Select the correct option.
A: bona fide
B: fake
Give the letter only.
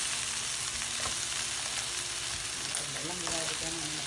A